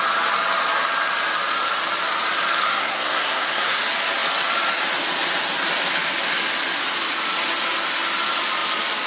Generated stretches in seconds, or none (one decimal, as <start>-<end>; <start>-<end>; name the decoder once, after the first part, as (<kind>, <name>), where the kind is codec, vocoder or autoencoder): 2.6-3.8 (codec, SNAC)